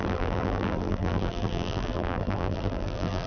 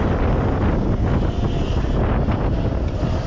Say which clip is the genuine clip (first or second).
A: second